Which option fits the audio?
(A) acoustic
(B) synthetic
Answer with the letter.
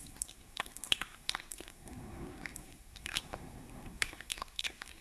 B